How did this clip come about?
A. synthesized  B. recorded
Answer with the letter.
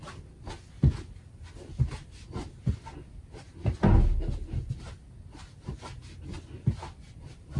B